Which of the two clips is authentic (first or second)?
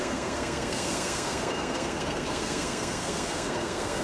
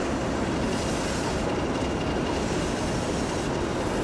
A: second